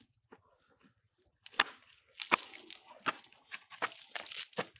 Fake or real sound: real